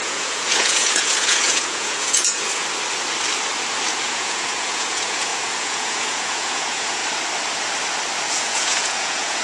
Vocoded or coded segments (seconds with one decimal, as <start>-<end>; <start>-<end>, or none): 0.0-2.6; 4.0-7.0; 8.3-9.4